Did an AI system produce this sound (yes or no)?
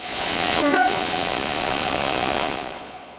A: yes